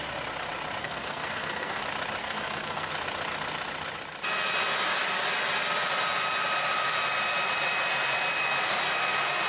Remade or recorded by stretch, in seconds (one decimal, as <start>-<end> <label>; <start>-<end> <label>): 0.0-0.8 recorded; 0.8-1.8 remade; 1.8-2.2 recorded; 2.2-2.9 remade; 2.9-9.5 recorded